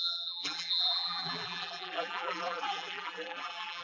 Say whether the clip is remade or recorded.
remade